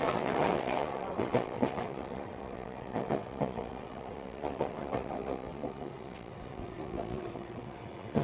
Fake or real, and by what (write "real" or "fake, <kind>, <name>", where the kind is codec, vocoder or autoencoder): fake, vocoder, WaveNeXt